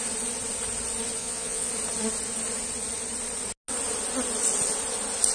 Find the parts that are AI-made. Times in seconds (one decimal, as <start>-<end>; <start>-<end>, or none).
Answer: 1.2-1.7